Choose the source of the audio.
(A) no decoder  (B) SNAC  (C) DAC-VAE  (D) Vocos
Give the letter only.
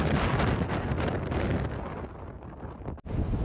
A